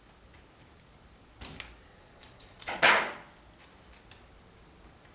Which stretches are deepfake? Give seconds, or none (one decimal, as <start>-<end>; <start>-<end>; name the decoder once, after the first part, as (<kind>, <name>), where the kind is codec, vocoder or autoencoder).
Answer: 1.9-2.8 (vocoder, Vocos)